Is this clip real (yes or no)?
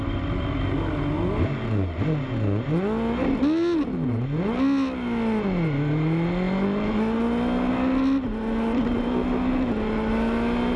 yes